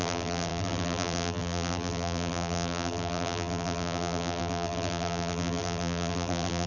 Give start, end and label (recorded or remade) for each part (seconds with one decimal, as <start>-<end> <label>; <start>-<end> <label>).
0.0-6.7 remade